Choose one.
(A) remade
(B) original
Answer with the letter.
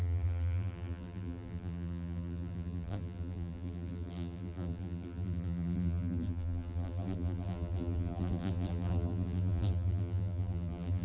A